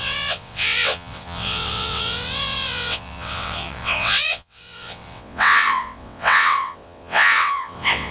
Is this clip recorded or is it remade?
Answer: remade